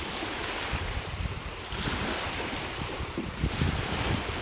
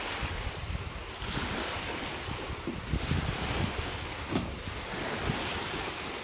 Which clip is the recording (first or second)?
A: second